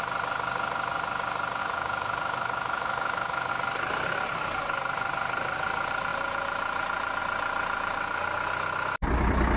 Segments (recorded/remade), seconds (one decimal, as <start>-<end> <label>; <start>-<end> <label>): 0.0-1.6 recorded; 1.6-3.5 remade; 3.5-9.6 recorded